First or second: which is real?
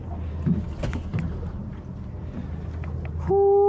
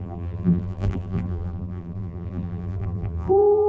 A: first